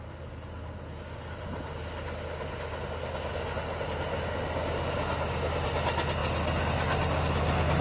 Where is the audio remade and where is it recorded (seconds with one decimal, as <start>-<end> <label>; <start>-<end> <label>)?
0.0-7.8 recorded